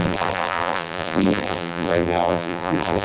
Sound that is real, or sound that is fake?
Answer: fake